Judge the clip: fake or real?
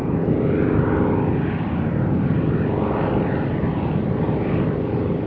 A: real